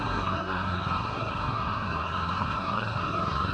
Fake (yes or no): yes